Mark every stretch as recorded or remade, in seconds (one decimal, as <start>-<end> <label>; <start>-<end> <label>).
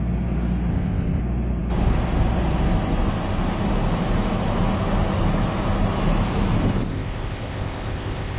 0.0-0.7 recorded; 0.7-1.2 remade; 1.2-6.9 recorded; 6.9-8.4 remade